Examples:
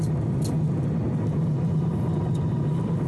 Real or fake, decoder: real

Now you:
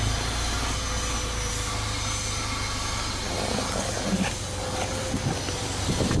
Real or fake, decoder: real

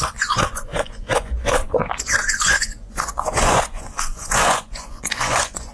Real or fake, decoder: fake, vocoder, Vocos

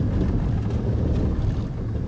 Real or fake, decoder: real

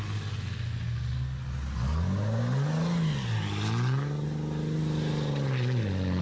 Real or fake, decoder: real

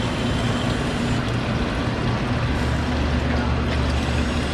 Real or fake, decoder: real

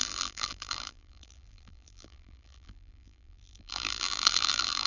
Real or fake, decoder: fake, vocoder, BigVGAN v2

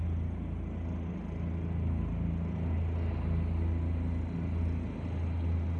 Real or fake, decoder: real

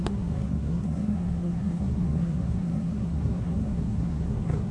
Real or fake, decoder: fake, codec, SNAC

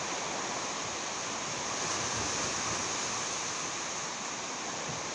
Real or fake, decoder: real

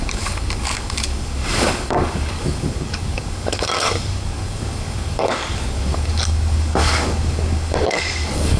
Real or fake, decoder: fake, codec, DAC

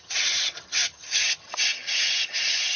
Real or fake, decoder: fake, vocoder, HiFi-GAN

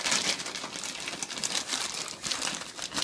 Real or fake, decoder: real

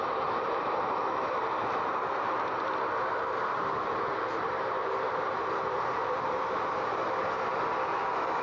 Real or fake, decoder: fake, vocoder, BigVGAN v2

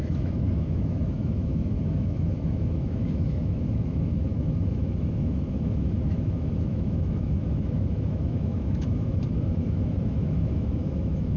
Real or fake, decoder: fake, autoencoder, DAC-VAE